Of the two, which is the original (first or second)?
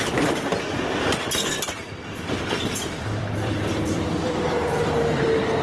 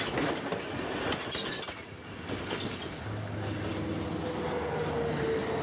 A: second